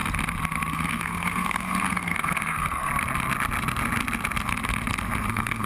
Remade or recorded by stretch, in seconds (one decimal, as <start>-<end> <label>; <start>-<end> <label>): 0.0-0.7 recorded; 0.7-2.9 remade; 2.9-5.3 recorded; 5.3-5.7 remade